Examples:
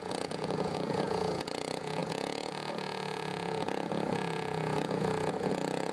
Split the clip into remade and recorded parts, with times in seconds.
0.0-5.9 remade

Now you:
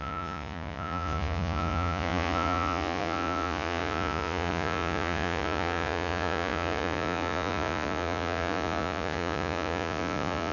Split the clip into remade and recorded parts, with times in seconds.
0.0-10.5 remade